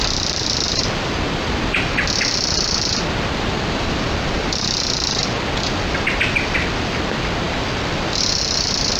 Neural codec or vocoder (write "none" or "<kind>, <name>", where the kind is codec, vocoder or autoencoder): vocoder, BigVGAN v2